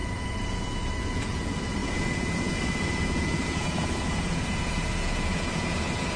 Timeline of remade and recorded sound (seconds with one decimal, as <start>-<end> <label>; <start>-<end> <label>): 0.0-6.2 remade

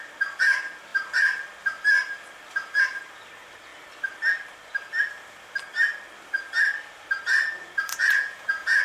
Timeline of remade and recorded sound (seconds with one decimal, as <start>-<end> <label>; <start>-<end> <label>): 0.0-7.9 recorded; 7.9-8.8 remade

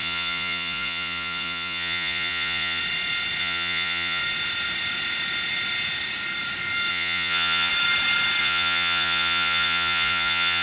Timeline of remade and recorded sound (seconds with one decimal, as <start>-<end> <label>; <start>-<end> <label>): 0.0-2.8 remade; 2.8-3.4 recorded; 3.4-4.2 remade; 4.2-6.9 recorded; 6.9-7.7 remade; 7.7-8.4 recorded; 8.4-10.6 remade

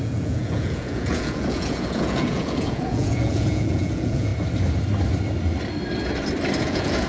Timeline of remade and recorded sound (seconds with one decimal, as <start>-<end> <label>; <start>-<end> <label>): 0.0-4.3 remade; 4.3-6.6 recorded; 6.6-7.1 remade